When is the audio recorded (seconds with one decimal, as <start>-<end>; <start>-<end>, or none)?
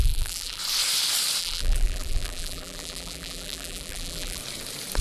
0.6-1.4; 4.4-5.0